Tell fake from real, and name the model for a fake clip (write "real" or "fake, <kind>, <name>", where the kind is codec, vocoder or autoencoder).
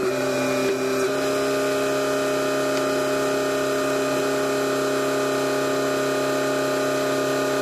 real